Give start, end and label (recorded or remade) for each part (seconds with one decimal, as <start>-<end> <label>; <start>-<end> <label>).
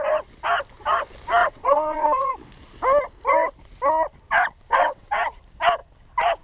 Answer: 0.0-1.4 recorded; 1.4-2.3 remade; 2.3-4.7 recorded; 4.7-5.2 remade; 5.2-6.4 recorded